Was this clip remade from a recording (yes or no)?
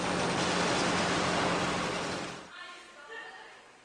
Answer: no